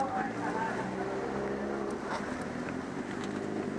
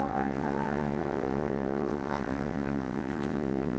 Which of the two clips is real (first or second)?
first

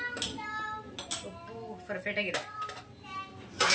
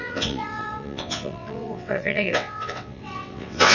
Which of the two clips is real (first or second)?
first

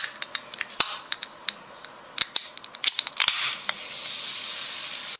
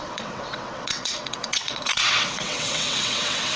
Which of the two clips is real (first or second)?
first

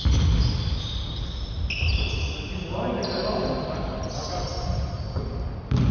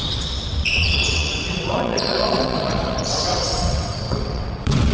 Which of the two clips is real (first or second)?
first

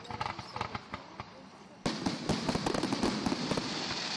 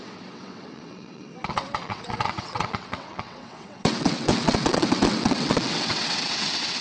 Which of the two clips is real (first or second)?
first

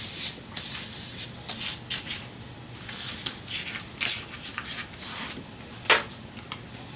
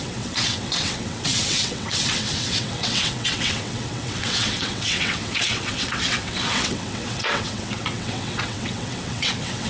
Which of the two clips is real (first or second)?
first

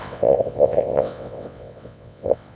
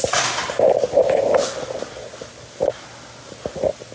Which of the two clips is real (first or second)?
second